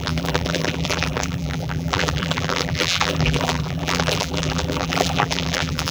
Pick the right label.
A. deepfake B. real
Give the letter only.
A